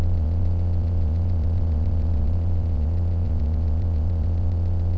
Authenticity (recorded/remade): remade